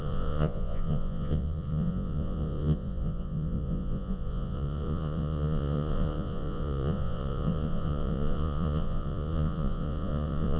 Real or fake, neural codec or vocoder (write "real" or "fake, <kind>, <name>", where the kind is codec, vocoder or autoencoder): fake, vocoder, Vocos